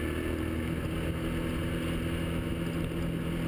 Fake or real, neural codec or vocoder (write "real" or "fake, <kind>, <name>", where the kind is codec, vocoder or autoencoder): real